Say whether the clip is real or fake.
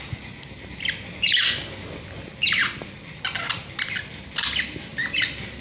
real